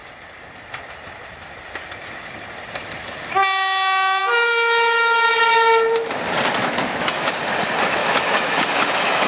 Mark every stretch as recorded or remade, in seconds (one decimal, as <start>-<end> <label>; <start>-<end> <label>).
0.0-6.6 recorded; 6.6-7.4 remade; 7.4-8.0 recorded; 8.0-9.3 remade